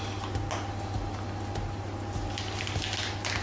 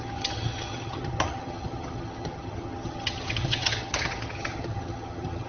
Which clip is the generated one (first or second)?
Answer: second